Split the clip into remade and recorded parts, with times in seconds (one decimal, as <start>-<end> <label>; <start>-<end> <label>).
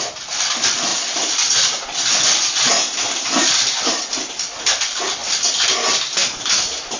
0.0-0.9 recorded; 0.9-4.0 remade; 4.0-6.2 recorded; 6.2-7.0 remade